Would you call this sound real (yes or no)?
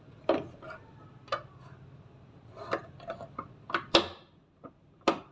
yes